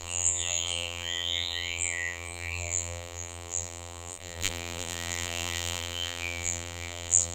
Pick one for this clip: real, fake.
fake